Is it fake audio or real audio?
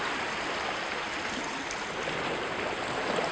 real